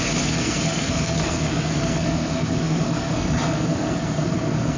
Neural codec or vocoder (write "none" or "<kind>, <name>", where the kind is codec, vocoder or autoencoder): codec, SNAC